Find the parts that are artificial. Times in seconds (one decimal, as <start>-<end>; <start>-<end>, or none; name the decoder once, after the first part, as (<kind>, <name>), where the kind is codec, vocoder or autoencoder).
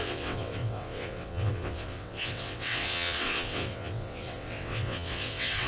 0.0-5.7 (vocoder, WaveNeXt)